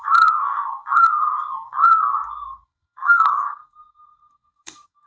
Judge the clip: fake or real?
fake